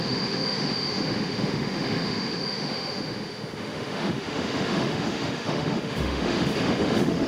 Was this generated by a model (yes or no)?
yes